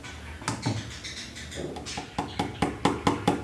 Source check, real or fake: real